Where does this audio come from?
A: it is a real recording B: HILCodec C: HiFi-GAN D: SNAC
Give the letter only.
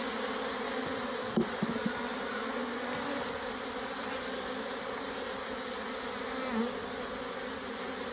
A